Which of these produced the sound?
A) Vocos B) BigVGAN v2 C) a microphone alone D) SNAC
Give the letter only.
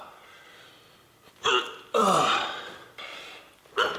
B